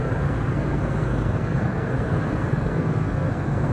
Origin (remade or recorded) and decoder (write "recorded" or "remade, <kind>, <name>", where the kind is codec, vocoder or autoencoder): remade, codec, SNAC